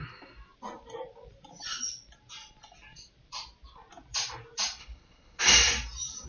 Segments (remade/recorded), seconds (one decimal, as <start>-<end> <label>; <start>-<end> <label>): 0.0-4.8 recorded; 4.8-5.4 remade; 5.4-6.3 recorded